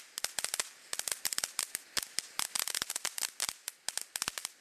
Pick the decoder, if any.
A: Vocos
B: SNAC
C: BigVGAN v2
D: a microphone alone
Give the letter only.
D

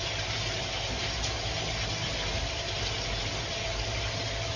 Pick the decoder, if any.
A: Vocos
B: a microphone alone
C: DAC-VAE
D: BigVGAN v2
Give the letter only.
B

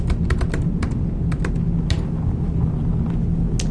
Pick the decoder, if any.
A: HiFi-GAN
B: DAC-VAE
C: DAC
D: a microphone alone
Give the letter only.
D